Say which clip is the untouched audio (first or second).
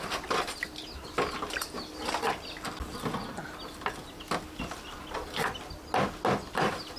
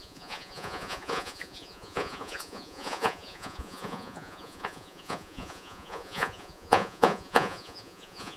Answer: first